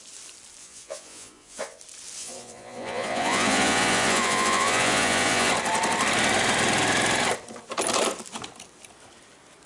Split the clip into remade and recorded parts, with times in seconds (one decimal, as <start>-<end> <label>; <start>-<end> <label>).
0.0-0.6 recorded; 0.6-1.8 remade; 1.8-2.2 recorded; 2.2-5.5 remade; 5.5-9.7 recorded